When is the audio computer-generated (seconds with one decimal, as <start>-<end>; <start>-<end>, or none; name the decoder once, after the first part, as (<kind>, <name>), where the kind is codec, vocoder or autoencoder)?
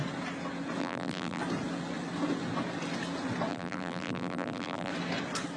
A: 0.8-1.4 (vocoder, BigVGAN v2); 3.5-4.9